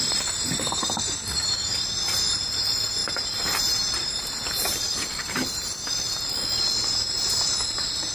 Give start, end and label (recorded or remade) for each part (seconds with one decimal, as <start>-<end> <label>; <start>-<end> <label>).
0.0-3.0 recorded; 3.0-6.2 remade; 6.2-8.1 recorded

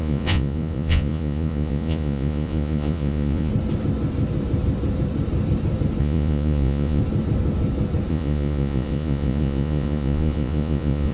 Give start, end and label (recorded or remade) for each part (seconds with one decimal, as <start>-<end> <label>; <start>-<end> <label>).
0.0-3.5 remade; 3.5-6.0 recorded; 6.0-7.0 remade; 7.0-8.1 recorded; 8.1-11.1 remade

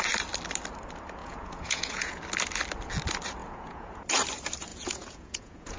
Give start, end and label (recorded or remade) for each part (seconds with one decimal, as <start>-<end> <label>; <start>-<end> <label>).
0.0-1.2 recorded; 1.2-2.2 remade; 2.2-3.4 recorded; 3.4-4.0 remade; 4.0-4.7 recorded; 4.7-5.8 remade